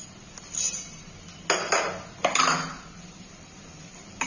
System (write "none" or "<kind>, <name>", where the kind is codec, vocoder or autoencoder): none